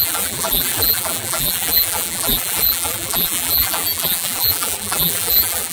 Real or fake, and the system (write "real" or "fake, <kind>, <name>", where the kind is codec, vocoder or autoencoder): fake, vocoder, BigVGAN v2